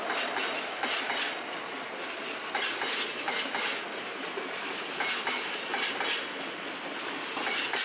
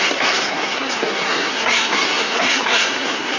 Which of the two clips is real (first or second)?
first